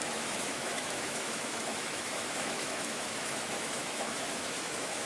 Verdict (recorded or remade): remade